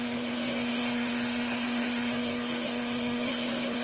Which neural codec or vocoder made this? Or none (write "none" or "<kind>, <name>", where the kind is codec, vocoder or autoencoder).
codec, SNAC